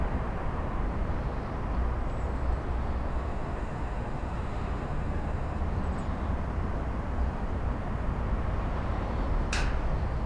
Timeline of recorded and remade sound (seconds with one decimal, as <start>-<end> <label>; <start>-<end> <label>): 0.0-3.1 recorded; 3.1-5.6 remade; 5.6-10.3 recorded